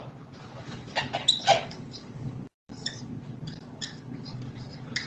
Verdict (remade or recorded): remade